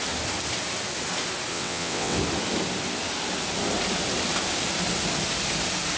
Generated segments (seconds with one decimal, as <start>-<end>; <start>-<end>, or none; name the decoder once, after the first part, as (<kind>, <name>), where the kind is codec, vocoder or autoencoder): 1.5-2.2 (vocoder, WaveNeXt)

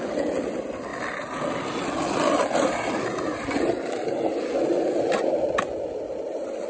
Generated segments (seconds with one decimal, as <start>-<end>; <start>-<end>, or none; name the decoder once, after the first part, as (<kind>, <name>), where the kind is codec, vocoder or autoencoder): none

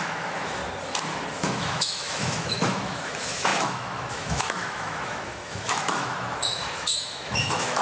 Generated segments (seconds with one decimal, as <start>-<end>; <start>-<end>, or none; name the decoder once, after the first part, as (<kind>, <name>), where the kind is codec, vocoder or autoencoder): 0.0-0.6 (autoencoder, DAC-VAE); 1.3-7.8

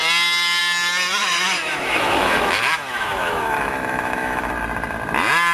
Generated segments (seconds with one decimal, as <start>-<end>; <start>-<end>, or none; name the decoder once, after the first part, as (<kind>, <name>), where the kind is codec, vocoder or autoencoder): 1.2-4.5 (autoencoder, DAC-VAE)

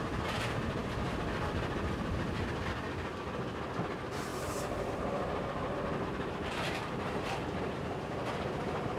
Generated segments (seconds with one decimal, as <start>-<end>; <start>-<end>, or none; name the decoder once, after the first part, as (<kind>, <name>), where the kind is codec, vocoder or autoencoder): 4.3-8.0 (vocoder, BigVGAN v2)